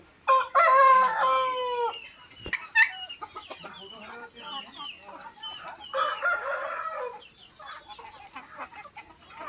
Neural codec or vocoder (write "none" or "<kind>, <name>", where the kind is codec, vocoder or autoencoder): none